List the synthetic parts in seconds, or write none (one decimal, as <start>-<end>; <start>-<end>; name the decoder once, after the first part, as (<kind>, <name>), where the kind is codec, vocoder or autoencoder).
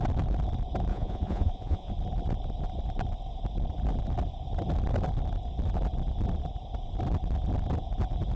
0.9-1.9 (vocoder, Vocos)